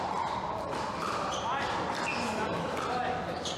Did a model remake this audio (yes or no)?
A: no